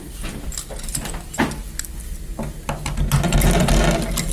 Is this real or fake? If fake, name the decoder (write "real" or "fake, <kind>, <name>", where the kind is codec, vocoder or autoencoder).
real